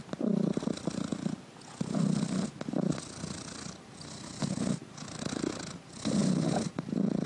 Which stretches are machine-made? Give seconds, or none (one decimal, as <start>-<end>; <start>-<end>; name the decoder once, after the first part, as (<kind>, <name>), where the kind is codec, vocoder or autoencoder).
none